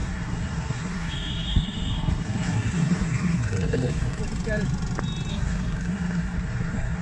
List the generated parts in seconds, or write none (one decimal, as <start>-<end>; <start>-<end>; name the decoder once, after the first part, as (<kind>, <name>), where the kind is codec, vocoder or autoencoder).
0.0-4.2 (codec, SNAC); 5.3-7.0